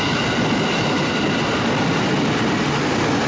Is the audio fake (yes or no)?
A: no